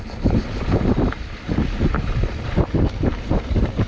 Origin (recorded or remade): remade